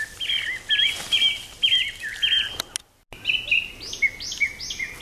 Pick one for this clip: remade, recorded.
recorded